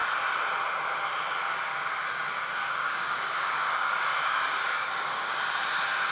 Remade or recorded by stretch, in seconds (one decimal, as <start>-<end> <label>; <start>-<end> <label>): 0.0-1.7 recorded; 1.7-5.4 remade; 5.4-6.1 recorded